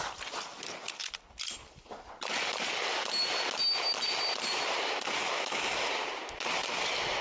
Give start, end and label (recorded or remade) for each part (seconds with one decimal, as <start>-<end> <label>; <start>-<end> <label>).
0.0-5.2 recorded; 5.2-5.9 remade; 5.9-7.2 recorded